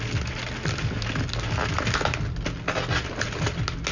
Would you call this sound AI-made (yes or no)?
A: no